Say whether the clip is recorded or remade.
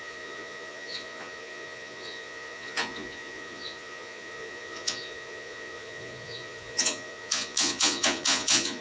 remade